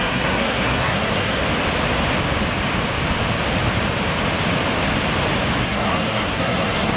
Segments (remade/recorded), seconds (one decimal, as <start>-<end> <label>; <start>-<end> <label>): 0.0-1.4 remade; 1.4-5.6 recorded; 5.6-7.0 remade